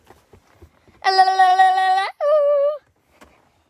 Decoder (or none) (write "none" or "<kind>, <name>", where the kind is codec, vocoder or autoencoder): none